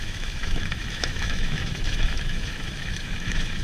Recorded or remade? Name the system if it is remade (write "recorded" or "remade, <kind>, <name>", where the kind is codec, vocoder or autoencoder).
remade, autoencoder, DAC-VAE